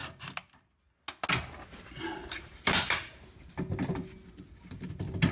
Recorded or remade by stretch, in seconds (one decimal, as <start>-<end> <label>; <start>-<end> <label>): 0.0-2.2 recorded; 2.2-3.3 remade; 3.3-5.3 recorded